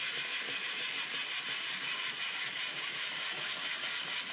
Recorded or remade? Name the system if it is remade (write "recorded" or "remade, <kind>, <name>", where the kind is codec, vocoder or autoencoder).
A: recorded